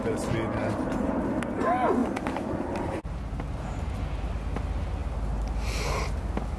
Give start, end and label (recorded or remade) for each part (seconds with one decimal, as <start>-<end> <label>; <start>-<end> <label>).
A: 0.0-0.6 recorded; 0.6-1.3 remade; 1.3-2.0 recorded; 2.0-3.9 remade; 3.9-6.6 recorded